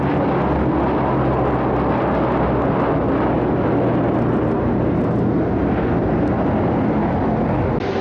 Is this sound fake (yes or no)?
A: no